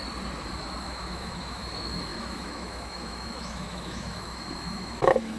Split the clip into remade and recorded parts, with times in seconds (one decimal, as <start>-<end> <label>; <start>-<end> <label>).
0.0-0.8 recorded; 0.8-5.4 remade